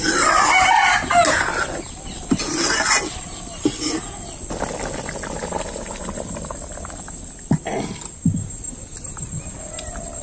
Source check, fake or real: real